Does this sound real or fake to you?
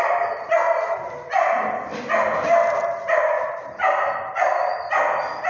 real